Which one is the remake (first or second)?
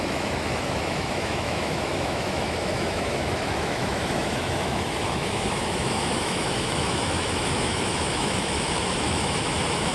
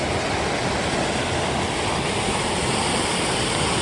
first